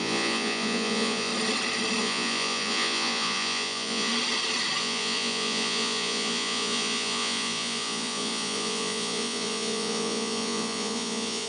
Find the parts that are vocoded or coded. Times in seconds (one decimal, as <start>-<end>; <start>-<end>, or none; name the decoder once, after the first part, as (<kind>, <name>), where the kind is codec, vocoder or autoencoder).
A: 0.0-1.3 (vocoder, Vocos); 2.0-4.1; 4.8-11.5